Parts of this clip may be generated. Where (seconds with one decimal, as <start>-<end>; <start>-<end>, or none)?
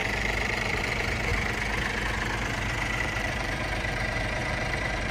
0.0-1.3; 3.0-5.1